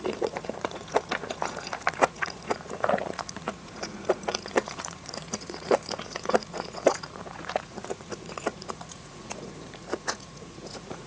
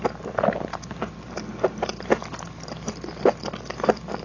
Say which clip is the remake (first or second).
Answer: first